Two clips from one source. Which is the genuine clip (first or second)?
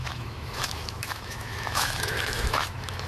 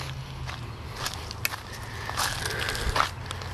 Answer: second